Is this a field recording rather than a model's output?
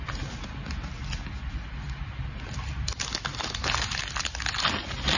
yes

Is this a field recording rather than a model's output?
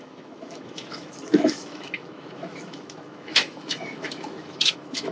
no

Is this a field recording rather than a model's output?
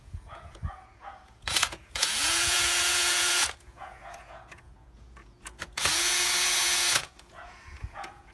no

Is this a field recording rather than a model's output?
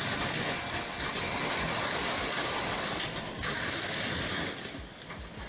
yes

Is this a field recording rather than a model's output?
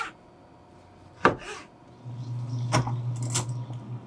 yes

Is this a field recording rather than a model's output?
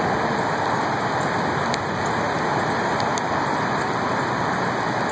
yes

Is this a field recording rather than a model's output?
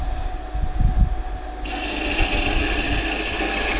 yes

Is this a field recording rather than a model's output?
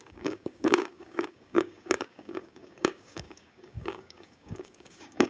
no